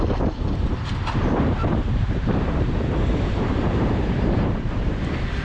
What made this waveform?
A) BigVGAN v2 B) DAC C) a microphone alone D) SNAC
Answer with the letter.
A